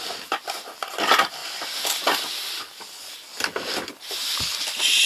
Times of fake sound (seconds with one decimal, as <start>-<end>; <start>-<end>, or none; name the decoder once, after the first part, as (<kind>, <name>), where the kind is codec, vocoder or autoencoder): none